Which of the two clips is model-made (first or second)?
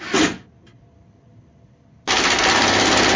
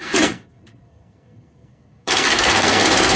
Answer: second